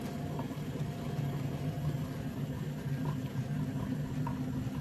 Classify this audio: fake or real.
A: real